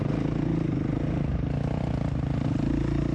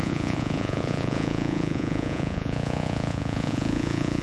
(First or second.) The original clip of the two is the first